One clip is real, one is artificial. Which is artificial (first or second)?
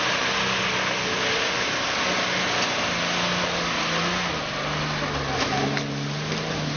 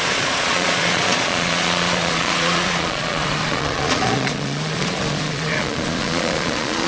second